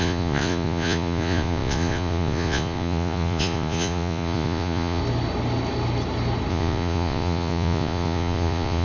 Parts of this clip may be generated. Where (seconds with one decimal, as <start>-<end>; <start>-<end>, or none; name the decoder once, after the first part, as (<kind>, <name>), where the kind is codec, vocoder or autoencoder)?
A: 0.0-5.0 (vocoder, Vocos); 6.5-8.8